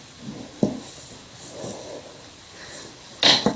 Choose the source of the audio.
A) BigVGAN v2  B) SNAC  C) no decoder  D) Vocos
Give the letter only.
C